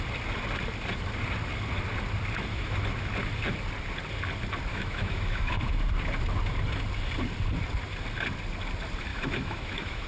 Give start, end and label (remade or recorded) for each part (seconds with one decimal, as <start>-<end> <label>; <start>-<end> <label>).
0.0-2.5 recorded; 2.5-3.1 remade; 3.1-4.7 recorded; 4.7-5.6 remade; 5.6-9.1 recorded; 9.1-10.1 remade